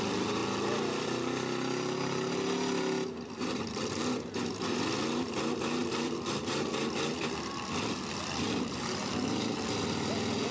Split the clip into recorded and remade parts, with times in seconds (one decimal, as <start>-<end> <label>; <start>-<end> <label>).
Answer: 0.0-10.5 recorded